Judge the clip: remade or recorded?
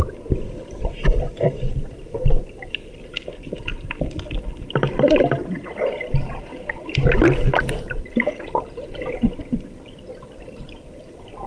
recorded